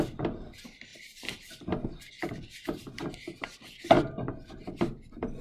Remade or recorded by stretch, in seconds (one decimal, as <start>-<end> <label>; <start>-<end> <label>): 0.0-2.8 remade; 2.8-4.8 recorded; 4.8-5.4 remade